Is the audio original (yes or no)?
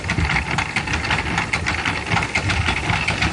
yes